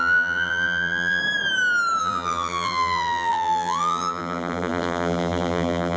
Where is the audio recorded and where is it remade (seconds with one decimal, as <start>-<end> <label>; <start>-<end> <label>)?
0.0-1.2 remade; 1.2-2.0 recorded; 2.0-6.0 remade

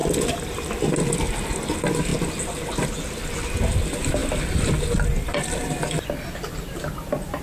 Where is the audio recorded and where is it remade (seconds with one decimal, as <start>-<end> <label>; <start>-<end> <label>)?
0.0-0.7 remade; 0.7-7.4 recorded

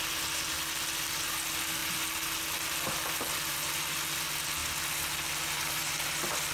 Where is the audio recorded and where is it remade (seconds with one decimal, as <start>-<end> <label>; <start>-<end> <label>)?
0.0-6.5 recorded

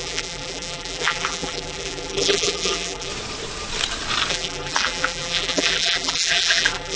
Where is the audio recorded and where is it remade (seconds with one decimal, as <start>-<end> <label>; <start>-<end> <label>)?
0.0-3.1 remade; 3.1-4.3 recorded; 4.3-7.0 remade

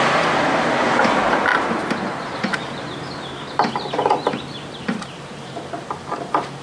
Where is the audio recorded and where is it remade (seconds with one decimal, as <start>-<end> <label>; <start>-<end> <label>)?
0.0-1.5 recorded; 1.5-5.5 remade; 5.5-6.6 recorded